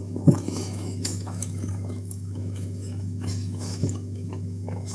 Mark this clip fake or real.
fake